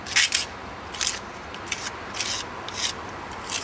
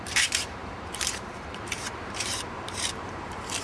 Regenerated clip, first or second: second